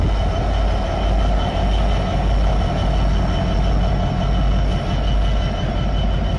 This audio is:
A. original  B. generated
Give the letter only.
A